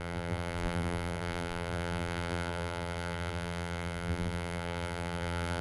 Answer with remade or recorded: remade